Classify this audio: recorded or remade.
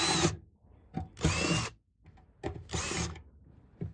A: recorded